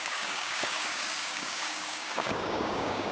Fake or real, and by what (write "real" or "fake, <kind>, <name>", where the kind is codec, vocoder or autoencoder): fake, codec, DAC